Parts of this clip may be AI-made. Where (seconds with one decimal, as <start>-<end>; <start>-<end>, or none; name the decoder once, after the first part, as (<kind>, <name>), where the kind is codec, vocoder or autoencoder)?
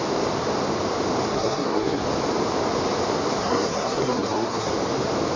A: 1.3-2.0 (codec, SNAC); 3.4-4.7